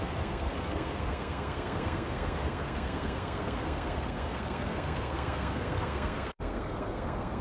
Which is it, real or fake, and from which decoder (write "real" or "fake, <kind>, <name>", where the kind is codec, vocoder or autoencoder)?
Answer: fake, codec, SNAC